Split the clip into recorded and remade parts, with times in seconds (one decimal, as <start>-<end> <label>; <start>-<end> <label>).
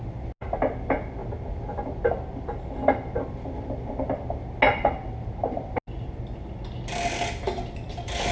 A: 0.0-8.3 recorded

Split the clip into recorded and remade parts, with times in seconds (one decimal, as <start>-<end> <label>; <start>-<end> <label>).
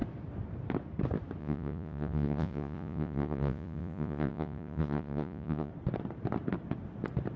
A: 0.0-1.4 recorded; 1.4-5.7 remade; 5.7-7.4 recorded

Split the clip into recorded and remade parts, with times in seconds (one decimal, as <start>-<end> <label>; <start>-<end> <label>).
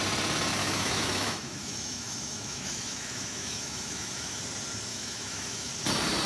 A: 0.0-0.6 recorded; 0.6-4.4 remade; 4.4-4.9 recorded; 4.9-5.7 remade; 5.7-6.3 recorded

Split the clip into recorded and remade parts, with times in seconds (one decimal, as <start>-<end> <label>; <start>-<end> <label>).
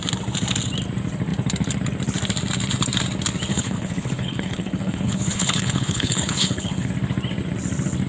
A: 0.0-3.5 recorded; 3.5-6.9 remade; 6.9-8.1 recorded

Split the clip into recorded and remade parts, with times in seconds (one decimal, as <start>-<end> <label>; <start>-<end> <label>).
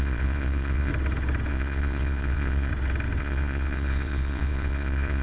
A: 0.0-0.9 remade; 0.9-1.5 recorded; 1.5-2.7 remade; 2.7-3.2 recorded; 3.2-5.2 remade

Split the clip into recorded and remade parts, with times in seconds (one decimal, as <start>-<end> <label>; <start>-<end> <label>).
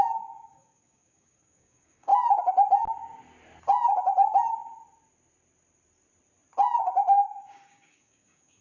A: 0.0-2.1 remade; 2.1-6.8 recorded; 6.8-8.6 remade